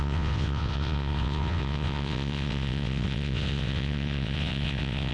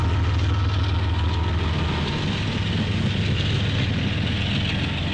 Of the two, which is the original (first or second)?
second